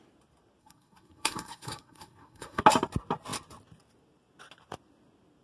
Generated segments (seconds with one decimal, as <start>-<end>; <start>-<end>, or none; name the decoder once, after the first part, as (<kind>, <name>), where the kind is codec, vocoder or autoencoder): 0.6-2.6 (codec, SNAC)